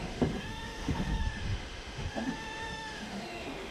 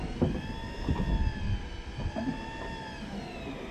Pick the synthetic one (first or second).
first